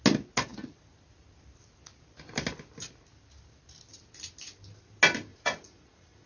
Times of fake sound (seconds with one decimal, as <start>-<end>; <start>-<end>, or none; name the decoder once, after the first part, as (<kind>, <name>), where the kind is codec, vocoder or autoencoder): 5.3-6.3 (vocoder, Vocos)